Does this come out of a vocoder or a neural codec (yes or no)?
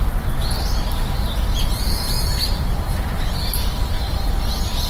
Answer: no